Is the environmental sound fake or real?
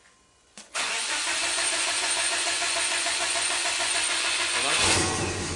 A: fake